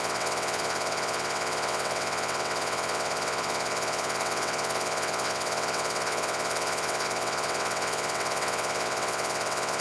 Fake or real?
fake